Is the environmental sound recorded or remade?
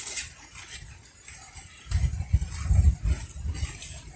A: recorded